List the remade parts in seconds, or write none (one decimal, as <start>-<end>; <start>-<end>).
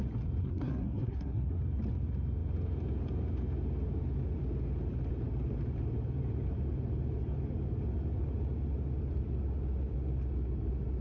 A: 0.4-1.6